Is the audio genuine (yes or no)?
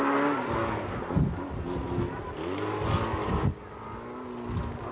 yes